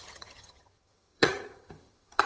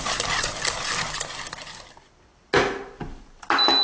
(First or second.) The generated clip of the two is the first